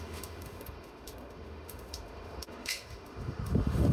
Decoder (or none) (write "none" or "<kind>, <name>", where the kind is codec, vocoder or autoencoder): autoencoder, DAC-VAE